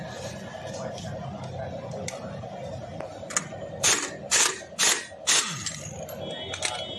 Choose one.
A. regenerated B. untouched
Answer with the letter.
B